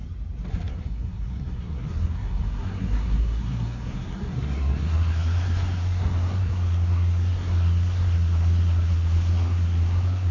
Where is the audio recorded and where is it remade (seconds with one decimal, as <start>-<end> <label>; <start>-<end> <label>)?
0.0-0.5 recorded; 0.5-10.3 remade